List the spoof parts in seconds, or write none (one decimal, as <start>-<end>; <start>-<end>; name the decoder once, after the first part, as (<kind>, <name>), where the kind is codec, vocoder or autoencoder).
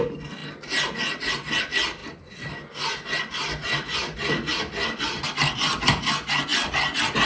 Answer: 2.0-2.5 (vocoder, BigVGAN v2); 3.6-6.0